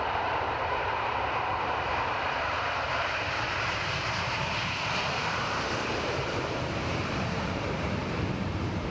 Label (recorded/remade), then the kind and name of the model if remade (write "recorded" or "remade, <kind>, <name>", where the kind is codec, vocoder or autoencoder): remade, vocoder, BigVGAN v2